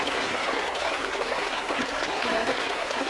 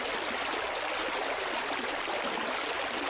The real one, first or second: second